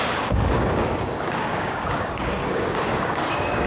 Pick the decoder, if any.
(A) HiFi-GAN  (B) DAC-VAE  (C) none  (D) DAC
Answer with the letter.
D